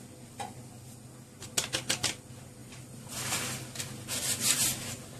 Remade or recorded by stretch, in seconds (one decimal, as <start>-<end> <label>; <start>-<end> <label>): 0.0-2.6 recorded; 2.6-3.8 remade; 3.8-5.2 recorded